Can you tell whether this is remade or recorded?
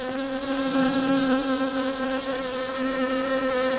remade